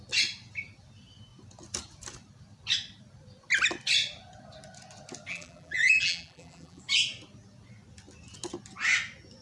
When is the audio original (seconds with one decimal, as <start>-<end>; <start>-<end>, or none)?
0.0-5.3; 6.8-9.4